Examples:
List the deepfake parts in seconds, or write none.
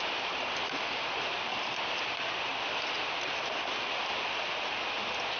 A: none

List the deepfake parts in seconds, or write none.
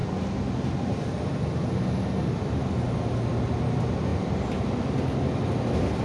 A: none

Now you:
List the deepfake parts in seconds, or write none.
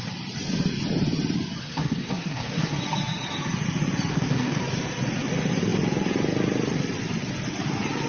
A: 1.6-2.8; 4.1-4.6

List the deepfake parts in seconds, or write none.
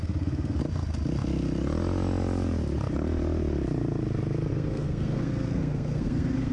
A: 0.0-0.6; 4.5-6.5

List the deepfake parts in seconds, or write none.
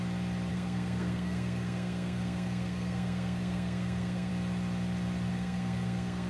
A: 0.5-4.3; 5.3-6.3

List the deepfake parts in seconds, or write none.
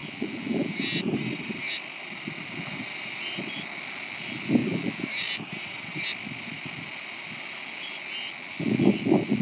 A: none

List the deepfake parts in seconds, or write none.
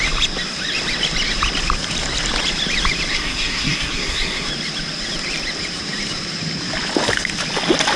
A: 3.1-4.5